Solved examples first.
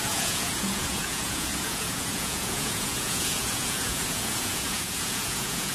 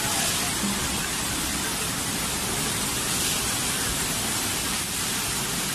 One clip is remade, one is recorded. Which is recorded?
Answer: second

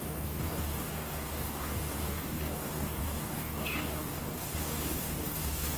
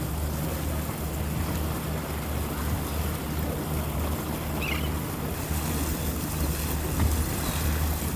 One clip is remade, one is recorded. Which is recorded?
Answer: second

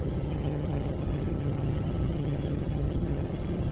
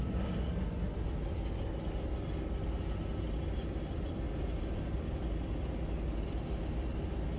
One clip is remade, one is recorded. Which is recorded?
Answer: second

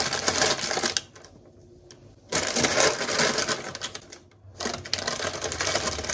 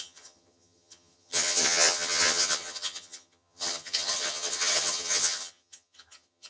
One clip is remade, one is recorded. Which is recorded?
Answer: first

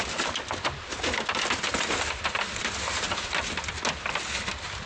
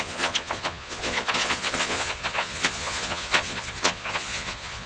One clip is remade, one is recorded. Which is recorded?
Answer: first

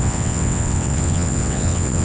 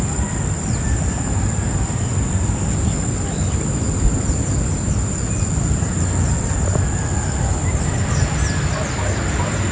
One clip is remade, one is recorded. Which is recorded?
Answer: second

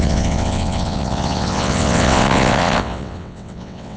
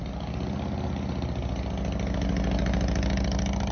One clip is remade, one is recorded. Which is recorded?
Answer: second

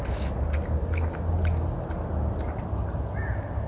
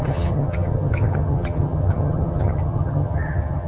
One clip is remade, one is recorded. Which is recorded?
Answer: first